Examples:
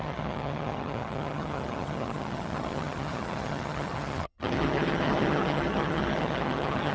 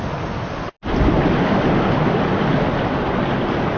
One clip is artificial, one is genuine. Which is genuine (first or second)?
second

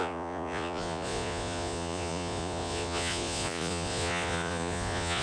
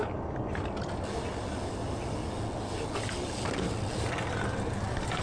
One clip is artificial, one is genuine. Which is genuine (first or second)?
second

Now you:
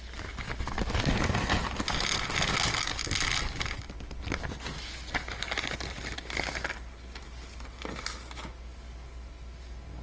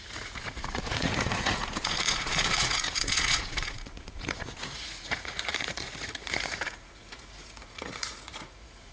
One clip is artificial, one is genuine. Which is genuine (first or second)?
first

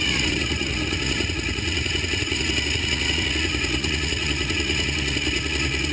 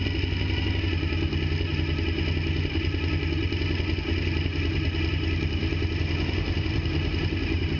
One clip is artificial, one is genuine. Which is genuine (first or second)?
second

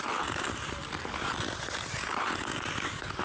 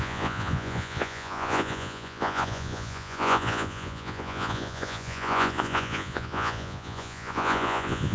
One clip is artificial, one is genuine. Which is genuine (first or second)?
first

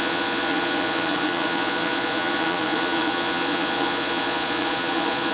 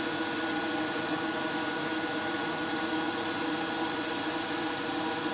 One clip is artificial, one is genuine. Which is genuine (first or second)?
second